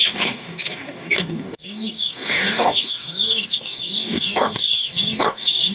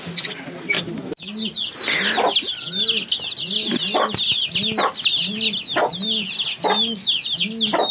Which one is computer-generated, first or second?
first